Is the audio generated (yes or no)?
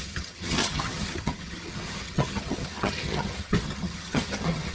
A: yes